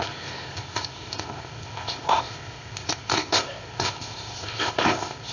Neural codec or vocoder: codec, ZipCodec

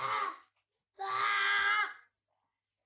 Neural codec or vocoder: none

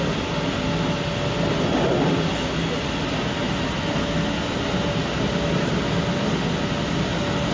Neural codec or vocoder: none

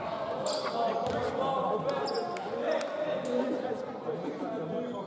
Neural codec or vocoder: none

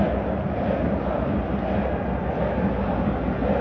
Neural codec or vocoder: none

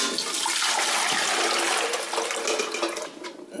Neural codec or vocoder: none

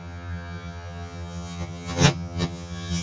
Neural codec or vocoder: vocoder, HiFi-GAN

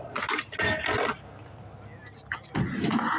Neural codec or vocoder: none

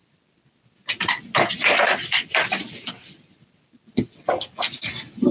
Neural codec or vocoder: none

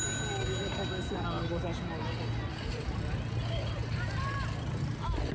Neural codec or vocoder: none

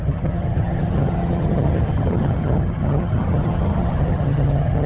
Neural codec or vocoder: vocoder, HiFi-GAN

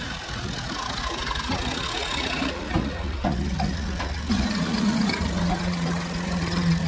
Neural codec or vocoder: vocoder, Vocos